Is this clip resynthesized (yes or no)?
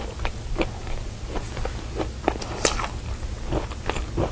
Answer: no